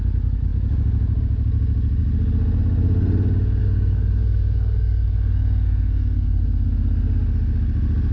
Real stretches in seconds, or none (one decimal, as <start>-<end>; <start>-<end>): 0.0-3.6; 6.4-8.1